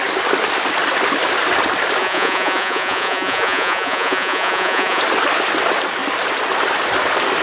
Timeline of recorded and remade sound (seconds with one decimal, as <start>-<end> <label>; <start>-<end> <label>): 0.0-2.0 recorded; 2.0-5.0 remade; 5.0-7.4 recorded